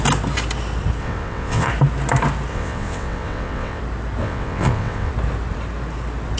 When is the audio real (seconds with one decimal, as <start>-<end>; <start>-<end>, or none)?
0.0-1.0; 1.7-2.5; 3.8-4.2; 5.1-6.4